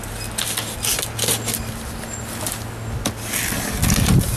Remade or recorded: recorded